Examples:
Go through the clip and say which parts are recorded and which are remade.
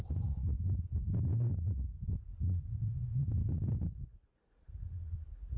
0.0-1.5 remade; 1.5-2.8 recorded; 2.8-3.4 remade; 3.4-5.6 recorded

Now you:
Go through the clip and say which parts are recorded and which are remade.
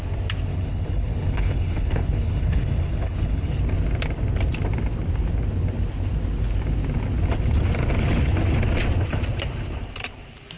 0.0-0.5 recorded; 0.5-3.6 remade; 3.6-10.6 recorded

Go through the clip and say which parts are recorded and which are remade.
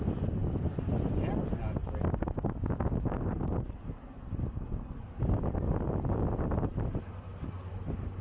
0.0-0.4 recorded; 0.4-1.2 remade; 1.2-8.2 recorded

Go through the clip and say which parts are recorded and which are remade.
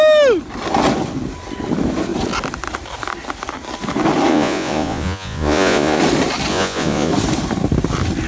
0.0-4.3 recorded; 4.3-6.0 remade; 6.0-6.5 recorded; 6.5-7.1 remade; 7.1-8.3 recorded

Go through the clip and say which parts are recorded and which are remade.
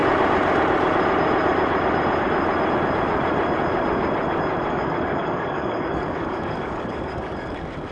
0.0-4.7 recorded; 4.7-7.9 remade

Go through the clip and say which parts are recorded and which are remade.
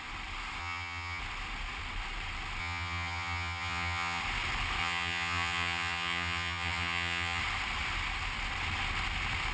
0.0-0.6 recorded; 0.6-1.2 remade; 1.2-2.6 recorded; 2.6-4.2 remade; 4.2-4.8 recorded; 4.8-7.4 remade; 7.4-9.5 recorded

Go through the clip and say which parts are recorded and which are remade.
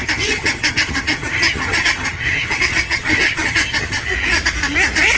0.0-4.1 remade; 4.1-5.2 recorded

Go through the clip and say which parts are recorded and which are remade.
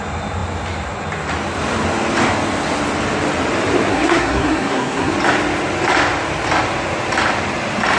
0.0-3.9 recorded; 3.9-5.1 remade; 5.1-8.0 recorded